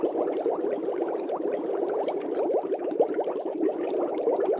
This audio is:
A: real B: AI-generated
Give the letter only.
B